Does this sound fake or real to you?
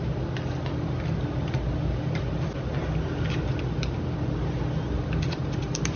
real